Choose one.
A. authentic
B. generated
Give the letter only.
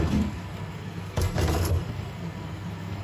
B